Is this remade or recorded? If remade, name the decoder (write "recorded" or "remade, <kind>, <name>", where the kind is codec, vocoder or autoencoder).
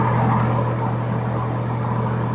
recorded